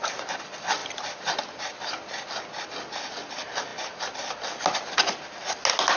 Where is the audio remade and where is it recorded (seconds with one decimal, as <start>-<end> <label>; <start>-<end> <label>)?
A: 0.0-6.0 recorded